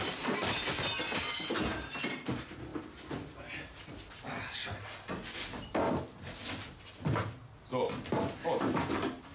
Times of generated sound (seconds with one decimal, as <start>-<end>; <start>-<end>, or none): none

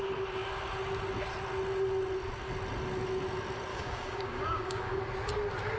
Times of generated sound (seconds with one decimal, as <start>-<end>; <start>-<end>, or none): 3.7-5.0

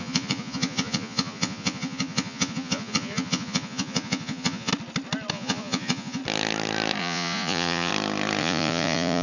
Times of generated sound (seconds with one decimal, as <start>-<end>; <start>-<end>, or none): 0.0-4.7; 5.3-6.2; 7.0-7.9; 8.4-9.2

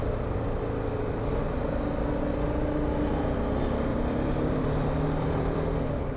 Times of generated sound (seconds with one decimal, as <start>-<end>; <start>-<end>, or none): 3.9-6.2

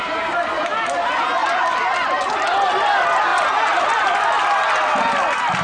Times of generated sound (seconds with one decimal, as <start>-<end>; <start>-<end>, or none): none

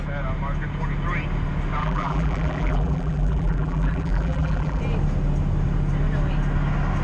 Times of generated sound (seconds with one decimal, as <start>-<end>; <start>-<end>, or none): 1.8-4.8

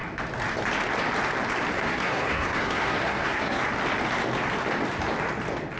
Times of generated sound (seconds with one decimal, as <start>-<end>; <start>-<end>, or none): 1.7-3.6

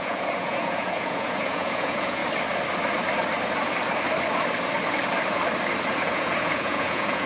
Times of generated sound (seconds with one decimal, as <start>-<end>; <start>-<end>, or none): 0.0-2.2; 5.9-7.3